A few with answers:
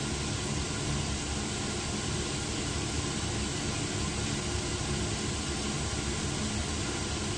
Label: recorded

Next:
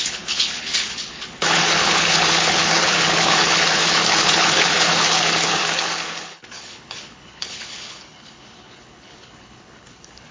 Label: remade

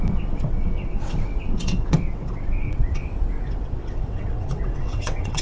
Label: remade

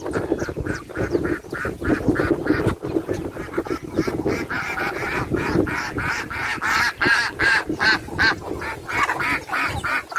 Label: recorded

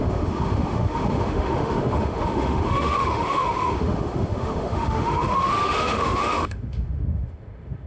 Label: remade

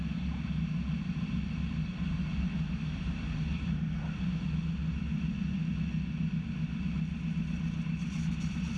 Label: recorded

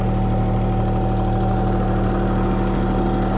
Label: recorded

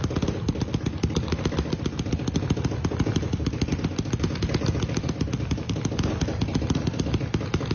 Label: recorded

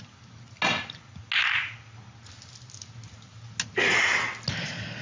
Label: recorded